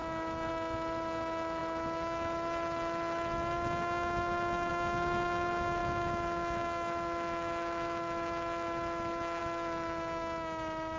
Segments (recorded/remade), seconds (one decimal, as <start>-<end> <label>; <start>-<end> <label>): 0.0-11.0 remade